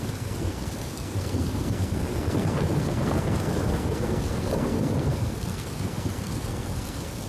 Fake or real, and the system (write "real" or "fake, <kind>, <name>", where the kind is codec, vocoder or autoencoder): fake, codec, SNAC